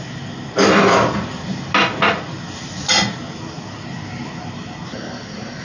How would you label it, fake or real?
real